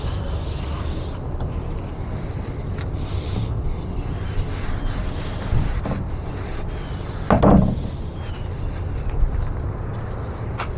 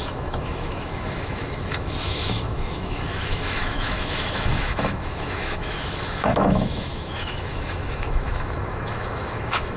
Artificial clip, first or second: second